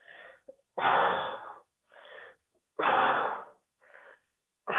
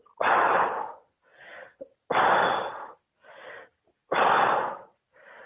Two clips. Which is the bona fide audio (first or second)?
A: second